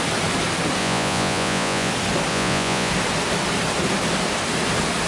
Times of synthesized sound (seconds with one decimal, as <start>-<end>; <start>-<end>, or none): 0.8-1.9; 2.3-2.9